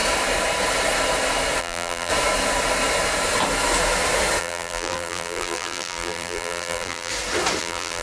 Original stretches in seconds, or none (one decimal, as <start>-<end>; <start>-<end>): 0.0-1.6; 2.1-4.4; 7.1-7.6